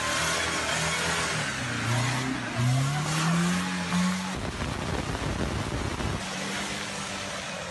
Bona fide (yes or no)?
yes